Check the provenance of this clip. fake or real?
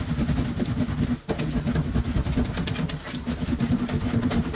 real